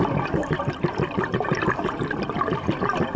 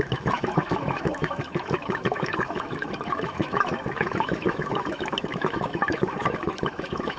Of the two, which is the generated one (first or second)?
second